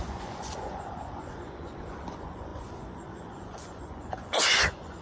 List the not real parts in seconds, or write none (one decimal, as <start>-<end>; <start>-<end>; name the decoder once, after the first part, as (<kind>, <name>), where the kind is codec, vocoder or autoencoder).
0.0-5.0 (vocoder, Vocos)